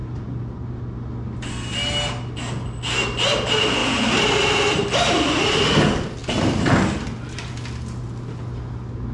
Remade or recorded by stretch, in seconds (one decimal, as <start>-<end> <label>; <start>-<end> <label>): 0.0-9.1 recorded